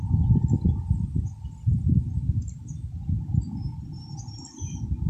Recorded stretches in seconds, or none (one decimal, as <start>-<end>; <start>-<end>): 0.0-5.1